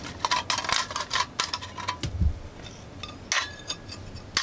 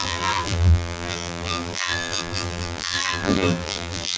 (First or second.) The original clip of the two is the first